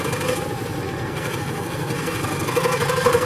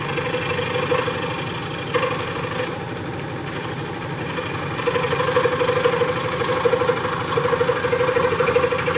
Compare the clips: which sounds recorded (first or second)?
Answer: second